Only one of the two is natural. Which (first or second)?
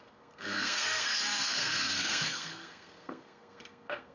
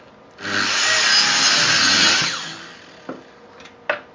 second